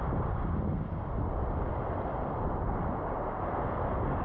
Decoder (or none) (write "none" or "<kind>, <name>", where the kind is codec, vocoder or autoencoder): none